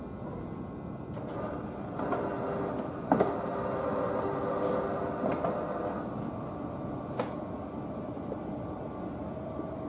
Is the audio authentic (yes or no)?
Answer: yes